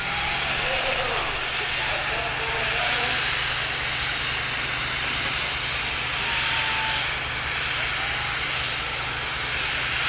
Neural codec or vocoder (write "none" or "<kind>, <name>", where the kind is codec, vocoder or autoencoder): none